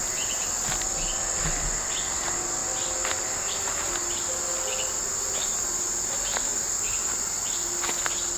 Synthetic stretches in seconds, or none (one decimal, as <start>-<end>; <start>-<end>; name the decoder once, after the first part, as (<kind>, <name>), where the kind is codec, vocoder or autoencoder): none